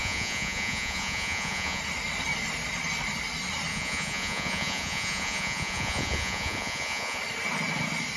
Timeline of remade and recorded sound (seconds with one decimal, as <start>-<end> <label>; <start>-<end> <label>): 0.0-1.8 remade; 1.8-3.7 recorded; 3.7-7.2 remade; 7.2-8.2 recorded